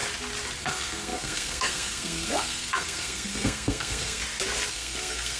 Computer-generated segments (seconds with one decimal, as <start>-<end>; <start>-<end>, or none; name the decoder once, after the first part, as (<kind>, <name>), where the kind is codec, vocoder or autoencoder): 0.6-4.2 (codec, SNAC); 4.7-5.4